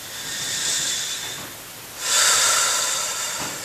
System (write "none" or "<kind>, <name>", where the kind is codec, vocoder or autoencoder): vocoder, BigVGAN v2